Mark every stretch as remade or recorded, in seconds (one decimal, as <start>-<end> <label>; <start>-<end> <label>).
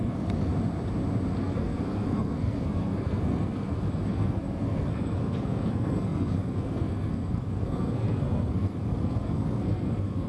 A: 0.0-0.5 remade; 0.5-1.4 recorded; 1.4-10.3 remade